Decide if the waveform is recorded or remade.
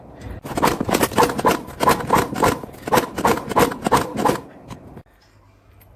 recorded